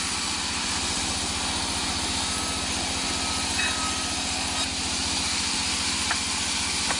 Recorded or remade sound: recorded